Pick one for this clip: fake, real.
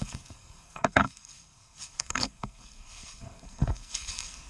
fake